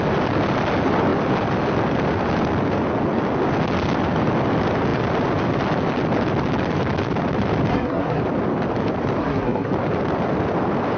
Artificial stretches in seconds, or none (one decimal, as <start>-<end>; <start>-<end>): 7.7-8.2; 9.2-9.7